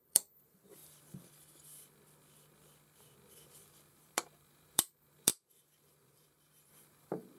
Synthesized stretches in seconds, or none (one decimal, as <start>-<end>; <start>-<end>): 0.0-0.8; 3.9-7.4